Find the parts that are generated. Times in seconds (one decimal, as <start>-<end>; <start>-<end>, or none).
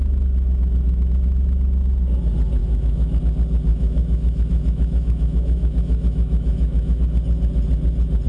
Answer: 2.6-3.2; 3.7-7.0